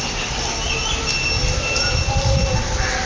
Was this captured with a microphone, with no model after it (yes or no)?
yes